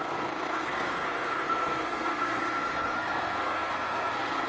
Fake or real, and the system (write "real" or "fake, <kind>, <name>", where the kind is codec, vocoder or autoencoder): fake, codec, SNAC